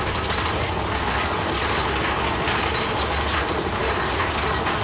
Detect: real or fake real